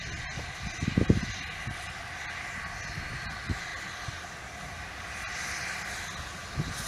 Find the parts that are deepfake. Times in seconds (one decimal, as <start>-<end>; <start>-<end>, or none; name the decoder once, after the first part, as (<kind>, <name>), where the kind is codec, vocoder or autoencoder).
none